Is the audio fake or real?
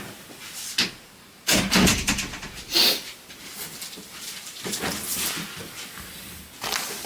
real